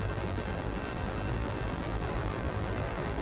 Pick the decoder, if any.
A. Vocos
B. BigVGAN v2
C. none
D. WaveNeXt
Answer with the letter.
B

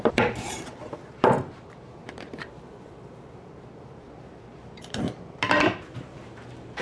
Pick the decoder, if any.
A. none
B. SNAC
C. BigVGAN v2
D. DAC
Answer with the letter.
C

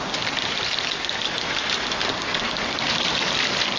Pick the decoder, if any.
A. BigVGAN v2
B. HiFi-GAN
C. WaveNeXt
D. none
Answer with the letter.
A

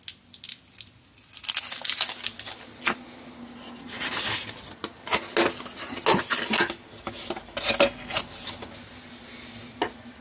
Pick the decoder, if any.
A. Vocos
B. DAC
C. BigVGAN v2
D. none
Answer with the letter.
D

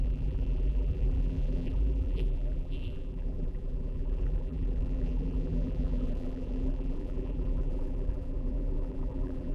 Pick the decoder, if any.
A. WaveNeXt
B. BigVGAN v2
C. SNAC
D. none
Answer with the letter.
B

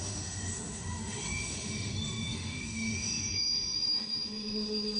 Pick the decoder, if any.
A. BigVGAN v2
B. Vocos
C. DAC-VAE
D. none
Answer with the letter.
C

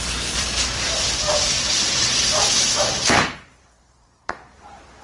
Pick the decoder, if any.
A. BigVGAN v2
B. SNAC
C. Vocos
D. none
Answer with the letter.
A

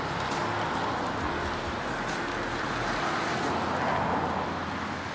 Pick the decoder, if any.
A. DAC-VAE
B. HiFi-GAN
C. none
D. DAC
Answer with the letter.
C